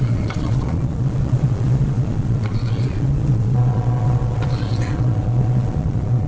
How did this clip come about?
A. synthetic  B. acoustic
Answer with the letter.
A